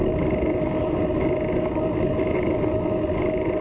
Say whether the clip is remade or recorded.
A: recorded